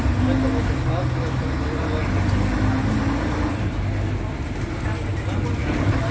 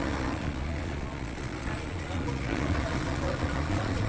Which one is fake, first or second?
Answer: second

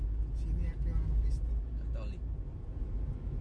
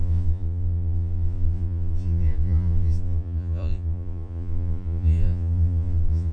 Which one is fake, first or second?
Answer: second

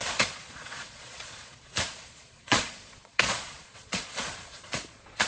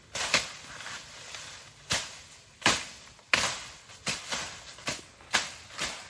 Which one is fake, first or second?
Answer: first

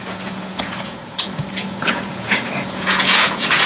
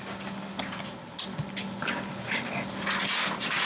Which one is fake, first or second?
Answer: first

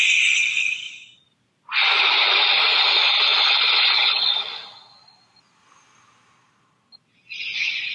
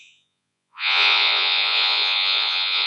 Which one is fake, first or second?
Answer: second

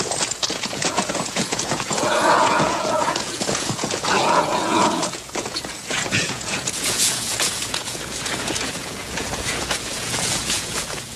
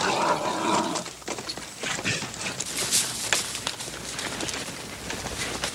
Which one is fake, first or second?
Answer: first